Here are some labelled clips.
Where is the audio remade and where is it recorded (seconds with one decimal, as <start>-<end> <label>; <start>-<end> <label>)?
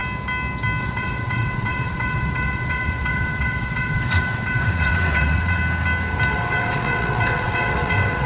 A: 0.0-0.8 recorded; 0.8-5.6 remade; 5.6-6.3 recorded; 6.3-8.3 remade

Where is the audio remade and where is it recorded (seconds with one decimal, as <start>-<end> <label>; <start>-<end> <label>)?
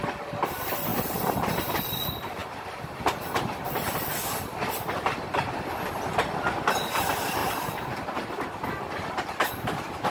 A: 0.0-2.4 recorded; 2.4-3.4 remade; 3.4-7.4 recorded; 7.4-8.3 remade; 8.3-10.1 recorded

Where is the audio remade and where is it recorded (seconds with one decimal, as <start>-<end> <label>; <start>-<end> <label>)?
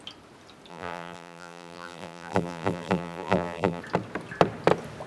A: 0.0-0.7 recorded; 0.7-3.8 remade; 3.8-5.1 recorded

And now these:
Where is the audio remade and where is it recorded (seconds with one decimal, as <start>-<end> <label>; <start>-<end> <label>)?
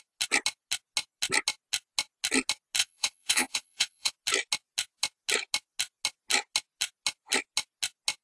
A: 0.0-2.8 recorded; 2.8-4.1 remade; 4.1-8.2 recorded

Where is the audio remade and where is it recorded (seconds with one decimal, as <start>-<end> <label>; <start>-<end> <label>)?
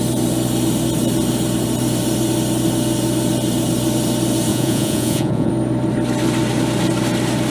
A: 0.0-4.5 recorded; 4.5-5.5 remade; 5.5-7.5 recorded